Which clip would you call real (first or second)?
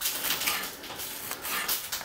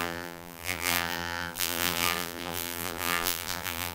first